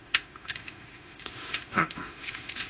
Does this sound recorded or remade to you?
remade